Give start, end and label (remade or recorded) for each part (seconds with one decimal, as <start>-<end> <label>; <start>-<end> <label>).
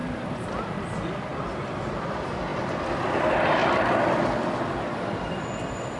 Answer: 0.0-0.9 remade; 0.9-2.5 recorded; 2.5-3.1 remade; 3.1-3.6 recorded; 3.6-6.0 remade